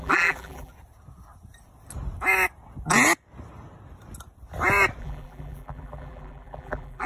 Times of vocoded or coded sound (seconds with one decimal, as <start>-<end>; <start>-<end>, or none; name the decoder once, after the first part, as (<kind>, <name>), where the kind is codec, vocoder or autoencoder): 0.0-0.7 (vocoder, BigVGAN v2); 5.0-7.1

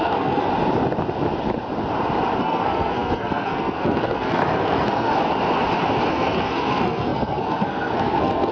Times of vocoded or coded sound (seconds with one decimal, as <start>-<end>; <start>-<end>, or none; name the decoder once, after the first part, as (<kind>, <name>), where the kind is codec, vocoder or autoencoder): 0.0-0.5 (codec, SNAC); 2.4-5.1; 6.1-8.5

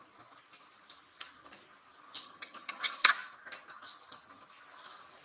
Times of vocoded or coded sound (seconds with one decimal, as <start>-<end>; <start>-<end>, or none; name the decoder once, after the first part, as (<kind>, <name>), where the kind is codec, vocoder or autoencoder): 2.2-3.1 (vocoder, HiFi-GAN)

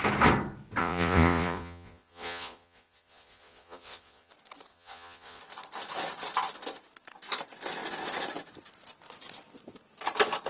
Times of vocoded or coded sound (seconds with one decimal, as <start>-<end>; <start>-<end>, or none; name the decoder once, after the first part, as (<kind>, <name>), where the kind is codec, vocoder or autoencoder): 0.8-4.3 (vocoder, Vocos); 4.7-5.4